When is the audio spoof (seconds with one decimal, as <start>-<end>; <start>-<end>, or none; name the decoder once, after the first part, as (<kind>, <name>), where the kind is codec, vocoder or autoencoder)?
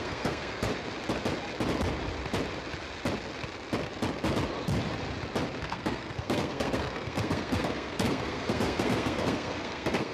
0.0-0.7 (codec, SNAC); 5.6-10.1